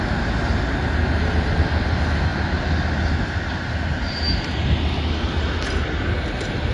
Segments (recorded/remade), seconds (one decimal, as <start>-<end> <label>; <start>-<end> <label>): 0.0-6.7 recorded